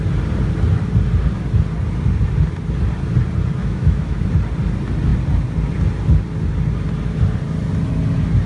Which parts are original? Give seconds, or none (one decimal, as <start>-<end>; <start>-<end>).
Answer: 0.0-3.6; 4.2-8.5